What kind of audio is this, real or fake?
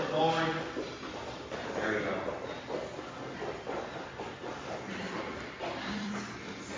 real